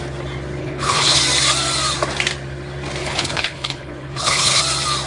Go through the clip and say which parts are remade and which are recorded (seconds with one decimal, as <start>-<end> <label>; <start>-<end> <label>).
0.0-0.6 recorded; 0.6-1.2 remade; 1.2-3.0 recorded; 3.0-4.6 remade; 4.6-5.1 recorded